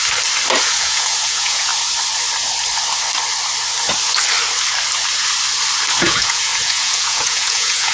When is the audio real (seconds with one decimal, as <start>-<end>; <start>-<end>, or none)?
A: 0.0-0.6; 1.7-6.0